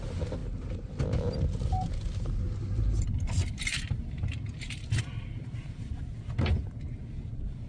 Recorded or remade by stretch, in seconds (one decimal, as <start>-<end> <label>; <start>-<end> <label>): 0.0-6.5 remade; 6.5-7.3 recorded; 7.3-7.7 remade